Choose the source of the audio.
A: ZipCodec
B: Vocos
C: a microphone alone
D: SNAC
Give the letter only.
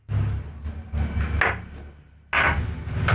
C